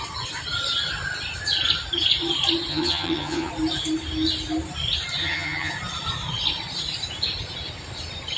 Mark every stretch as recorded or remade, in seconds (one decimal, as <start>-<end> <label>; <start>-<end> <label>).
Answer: 0.0-2.7 recorded; 2.7-3.5 remade; 3.5-5.2 recorded; 5.2-5.7 remade; 5.7-8.4 recorded